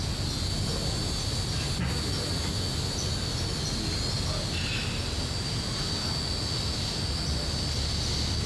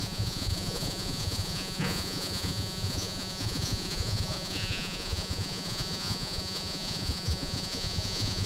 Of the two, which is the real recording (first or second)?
first